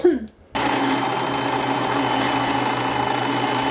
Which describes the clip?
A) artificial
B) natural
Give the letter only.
B